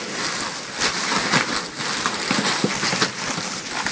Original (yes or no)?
yes